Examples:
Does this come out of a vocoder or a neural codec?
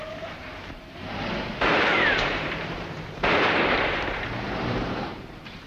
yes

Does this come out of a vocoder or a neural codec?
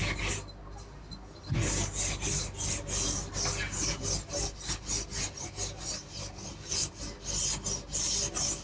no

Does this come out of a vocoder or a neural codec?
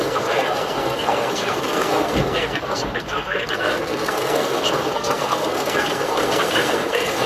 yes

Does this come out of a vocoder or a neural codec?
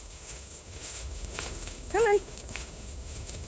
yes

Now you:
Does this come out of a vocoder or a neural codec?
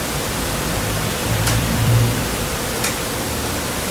yes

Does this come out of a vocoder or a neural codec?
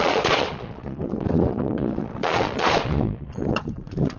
yes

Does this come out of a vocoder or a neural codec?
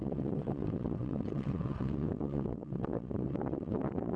yes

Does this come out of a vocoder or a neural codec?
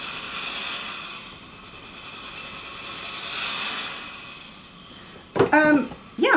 no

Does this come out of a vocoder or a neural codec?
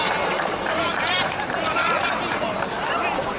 yes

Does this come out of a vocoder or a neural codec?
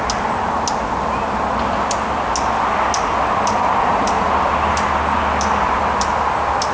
no